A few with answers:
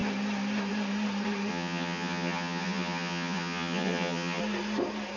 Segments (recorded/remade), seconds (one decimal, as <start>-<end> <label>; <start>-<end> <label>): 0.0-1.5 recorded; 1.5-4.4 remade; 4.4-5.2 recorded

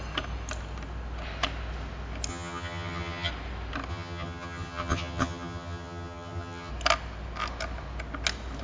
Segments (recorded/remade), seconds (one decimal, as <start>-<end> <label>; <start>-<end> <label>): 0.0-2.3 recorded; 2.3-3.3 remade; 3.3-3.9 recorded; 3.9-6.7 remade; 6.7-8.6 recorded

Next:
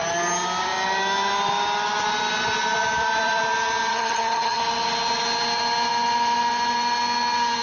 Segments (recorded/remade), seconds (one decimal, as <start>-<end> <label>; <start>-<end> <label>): 0.0-3.9 recorded; 3.9-4.6 remade; 4.6-7.6 recorded

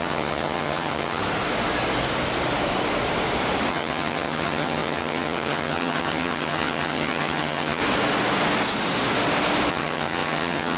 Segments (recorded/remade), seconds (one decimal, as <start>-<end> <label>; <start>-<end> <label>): 0.0-1.2 remade; 1.2-3.7 recorded; 3.7-7.8 remade; 7.8-9.7 recorded; 9.7-10.8 remade

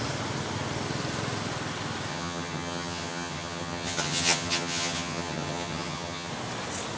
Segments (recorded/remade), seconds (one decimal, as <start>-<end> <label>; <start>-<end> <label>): 0.0-2.1 recorded; 2.1-6.3 remade; 6.3-7.0 recorded

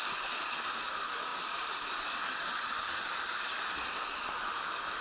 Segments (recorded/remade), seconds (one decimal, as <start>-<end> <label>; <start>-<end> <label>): 0.0-5.0 recorded